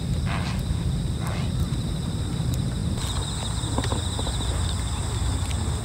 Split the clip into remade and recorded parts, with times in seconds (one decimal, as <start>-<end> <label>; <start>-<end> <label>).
0.0-5.8 recorded